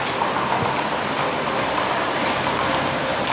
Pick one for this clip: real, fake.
real